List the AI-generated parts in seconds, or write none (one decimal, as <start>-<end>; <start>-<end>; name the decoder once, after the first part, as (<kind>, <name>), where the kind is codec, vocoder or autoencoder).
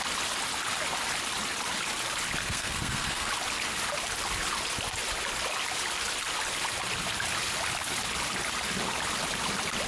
2.4-3.3 (codec, SNAC)